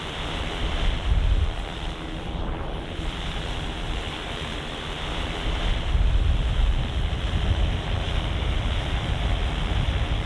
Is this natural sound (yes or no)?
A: no